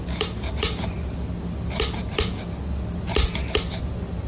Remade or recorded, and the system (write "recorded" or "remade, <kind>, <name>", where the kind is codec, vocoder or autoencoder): recorded